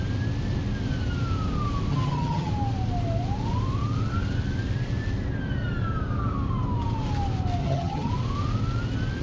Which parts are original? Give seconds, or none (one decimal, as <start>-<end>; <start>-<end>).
0.0-1.9; 2.5-7.6; 8.1-9.2

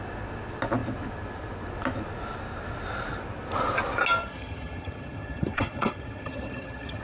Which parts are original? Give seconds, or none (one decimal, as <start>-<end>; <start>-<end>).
0.0-4.2